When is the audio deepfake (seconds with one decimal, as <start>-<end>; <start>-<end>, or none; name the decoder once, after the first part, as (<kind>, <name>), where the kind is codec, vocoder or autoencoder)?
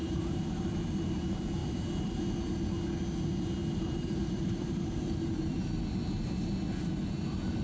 0.0-0.6 (vocoder, BigVGAN v2); 1.6-2.2; 3.6-5.8